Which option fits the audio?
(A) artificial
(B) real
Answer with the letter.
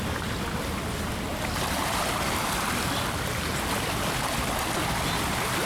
B